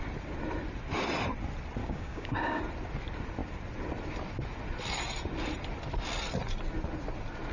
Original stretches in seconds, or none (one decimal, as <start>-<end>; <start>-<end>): 0.0-1.8; 2.6-7.5

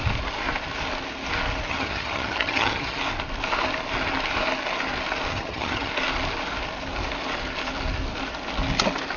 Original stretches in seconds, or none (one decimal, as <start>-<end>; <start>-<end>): 0.0-1.7; 3.0-5.3; 5.9-9.2

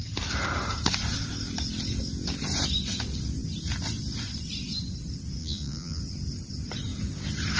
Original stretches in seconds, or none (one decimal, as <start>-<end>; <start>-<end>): 0.0-5.4; 6.0-7.6

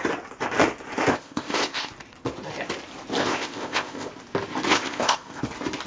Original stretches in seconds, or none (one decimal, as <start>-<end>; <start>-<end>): 0.0-1.1; 1.9-3.2; 4.1-4.7; 5.4-5.9

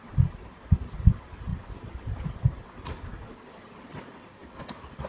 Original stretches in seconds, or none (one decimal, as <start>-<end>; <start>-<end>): 0.0-5.1

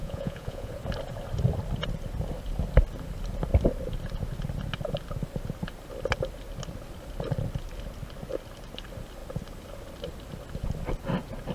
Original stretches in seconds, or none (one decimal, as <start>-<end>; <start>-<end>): 0.7-11.5

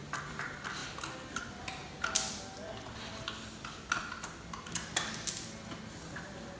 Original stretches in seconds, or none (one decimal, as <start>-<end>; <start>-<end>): 0.0-6.6

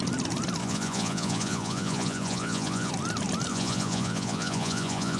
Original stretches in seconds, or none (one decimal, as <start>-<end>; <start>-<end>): 0.0-0.6; 2.9-3.5